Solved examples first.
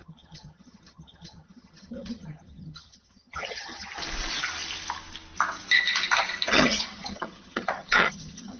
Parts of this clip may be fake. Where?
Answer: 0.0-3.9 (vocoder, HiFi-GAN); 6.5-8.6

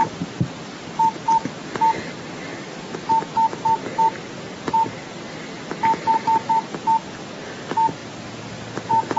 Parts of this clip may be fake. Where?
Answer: 8.0-8.7 (vocoder, BigVGAN v2)

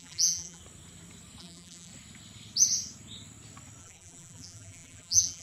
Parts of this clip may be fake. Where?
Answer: 0.0-0.6 (vocoder, BigVGAN v2); 1.4-1.9; 3.8-5.4

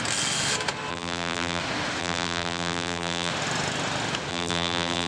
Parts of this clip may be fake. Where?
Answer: 0.9-1.6 (vocoder, BigVGAN v2); 2.0-3.3; 4.3-5.1

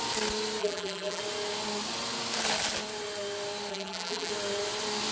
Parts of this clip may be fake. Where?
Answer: 0.6-1.2 (vocoder, BigVGAN v2); 3.7-4.3

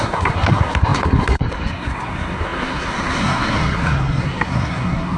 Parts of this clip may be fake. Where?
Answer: 0.0-5.2 (codec, SNAC)

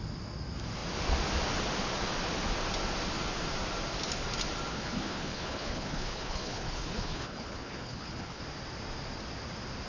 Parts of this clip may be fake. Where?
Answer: 4.7-8.4 (codec, HILCodec)

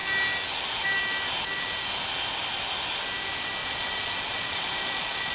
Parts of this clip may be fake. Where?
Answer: 3.6-5.3 (vocoder, Vocos)